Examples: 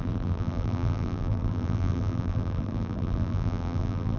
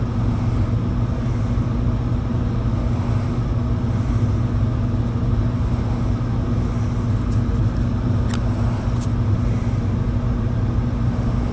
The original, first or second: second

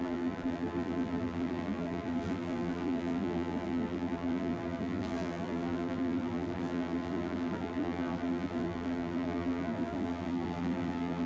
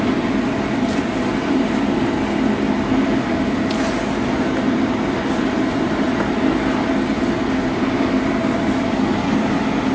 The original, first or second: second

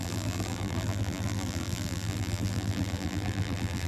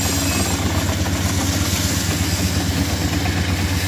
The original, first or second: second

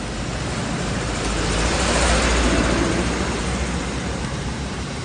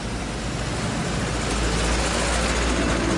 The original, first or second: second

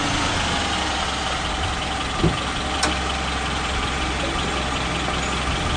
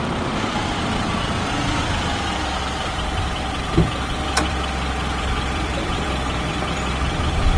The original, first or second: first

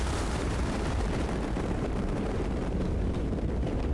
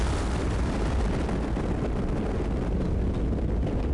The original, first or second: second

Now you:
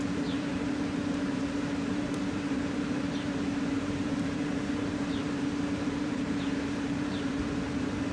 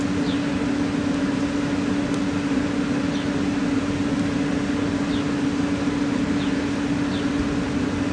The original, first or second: second